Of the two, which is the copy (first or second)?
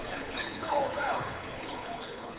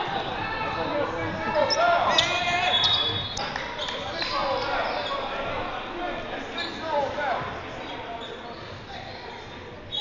first